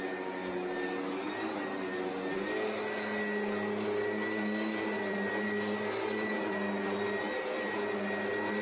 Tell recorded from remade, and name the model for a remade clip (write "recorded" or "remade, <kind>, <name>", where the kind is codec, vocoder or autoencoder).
recorded